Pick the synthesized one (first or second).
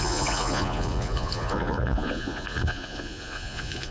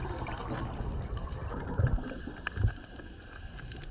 first